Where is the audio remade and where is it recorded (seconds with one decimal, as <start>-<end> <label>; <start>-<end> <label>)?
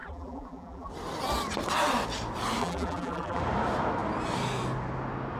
0.0-0.9 remade; 0.9-2.6 recorded; 2.6-3.4 remade; 3.4-5.4 recorded